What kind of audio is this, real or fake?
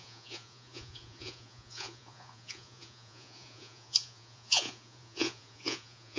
fake